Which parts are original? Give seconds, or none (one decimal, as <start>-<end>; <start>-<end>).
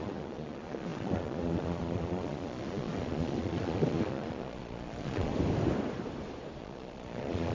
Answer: 5.3-6.6